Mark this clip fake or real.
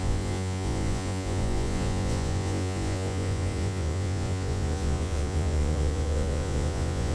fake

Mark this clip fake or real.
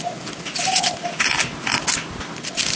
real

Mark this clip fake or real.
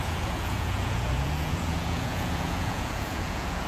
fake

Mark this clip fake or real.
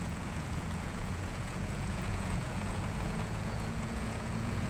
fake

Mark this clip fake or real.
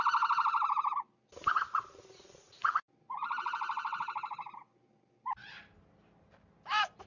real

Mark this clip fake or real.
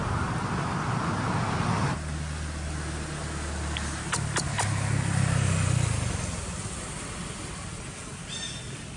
real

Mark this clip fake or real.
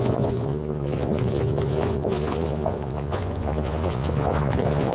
fake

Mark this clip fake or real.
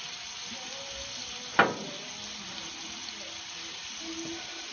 real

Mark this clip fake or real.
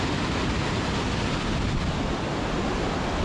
real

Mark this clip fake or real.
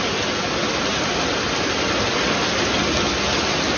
real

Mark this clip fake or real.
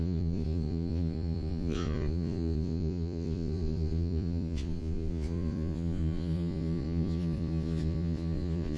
fake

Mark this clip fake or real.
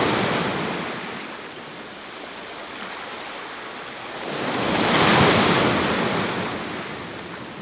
real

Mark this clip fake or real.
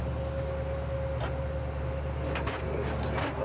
real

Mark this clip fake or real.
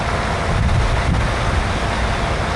real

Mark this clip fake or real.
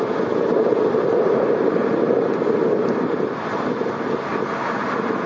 real